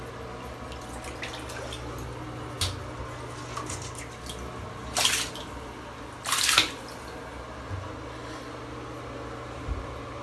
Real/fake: real